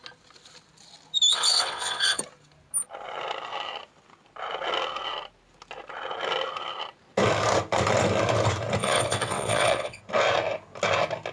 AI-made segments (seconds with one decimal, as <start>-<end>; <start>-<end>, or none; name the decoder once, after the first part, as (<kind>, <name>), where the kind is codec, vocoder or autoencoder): 1.3-2.2 (vocoder, WaveNeXt); 8.8-10.0